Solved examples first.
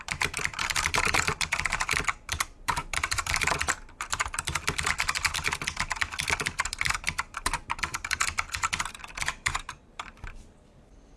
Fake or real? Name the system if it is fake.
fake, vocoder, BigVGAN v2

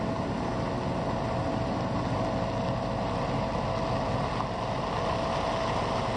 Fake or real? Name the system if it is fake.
real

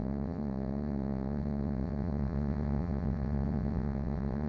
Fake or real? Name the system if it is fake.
fake, vocoder, WaveNeXt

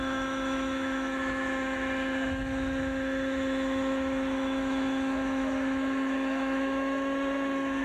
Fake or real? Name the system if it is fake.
fake, autoencoder, DAC-VAE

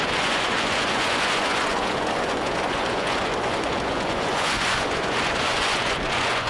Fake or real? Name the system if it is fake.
fake, vocoder, Vocos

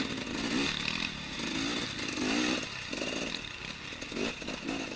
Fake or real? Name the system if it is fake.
real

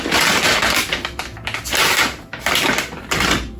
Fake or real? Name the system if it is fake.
real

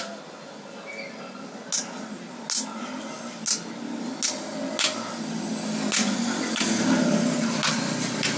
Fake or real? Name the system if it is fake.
real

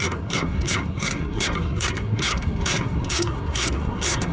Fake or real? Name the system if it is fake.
fake, codec, SNAC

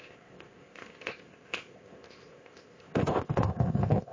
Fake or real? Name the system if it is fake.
fake, codec, ZipCodec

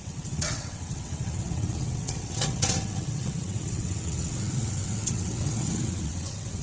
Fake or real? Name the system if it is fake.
fake, vocoder, WaveNeXt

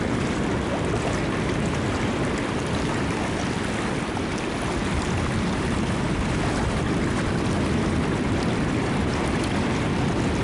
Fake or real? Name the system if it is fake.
real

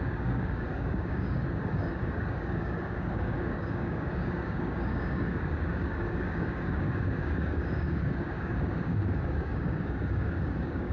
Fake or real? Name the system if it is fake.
fake, codec, DAC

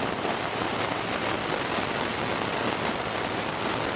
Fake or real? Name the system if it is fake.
real